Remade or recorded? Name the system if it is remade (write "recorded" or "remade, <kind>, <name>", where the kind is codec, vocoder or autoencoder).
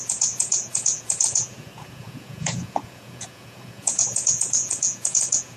remade, vocoder, Vocos